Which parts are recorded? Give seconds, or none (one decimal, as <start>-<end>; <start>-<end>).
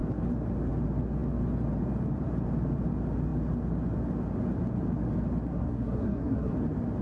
0.0-5.5; 6.5-7.0